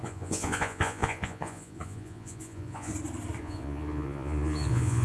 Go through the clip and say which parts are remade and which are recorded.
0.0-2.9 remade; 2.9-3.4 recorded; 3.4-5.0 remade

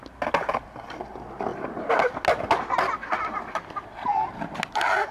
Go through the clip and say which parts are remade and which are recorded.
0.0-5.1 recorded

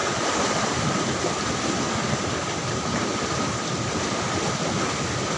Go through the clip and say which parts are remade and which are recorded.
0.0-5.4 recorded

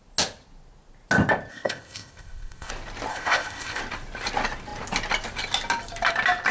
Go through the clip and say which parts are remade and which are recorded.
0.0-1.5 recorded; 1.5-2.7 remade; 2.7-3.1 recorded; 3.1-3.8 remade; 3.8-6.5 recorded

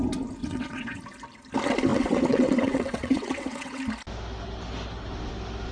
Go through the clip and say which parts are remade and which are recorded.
0.0-0.4 recorded; 0.4-1.0 remade; 1.0-1.9 recorded; 1.9-3.8 remade; 3.8-5.7 recorded

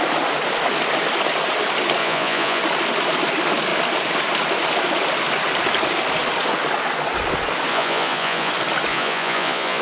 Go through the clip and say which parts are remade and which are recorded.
0.0-2.0 recorded; 2.0-2.6 remade; 2.6-7.7 recorded; 7.7-8.5 remade; 8.5-8.9 recorded; 8.9-9.8 remade

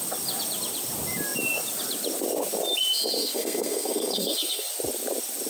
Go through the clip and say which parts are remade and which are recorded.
0.0-3.2 recorded; 3.2-4.7 remade; 4.7-5.5 recorded